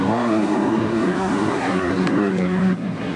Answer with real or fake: fake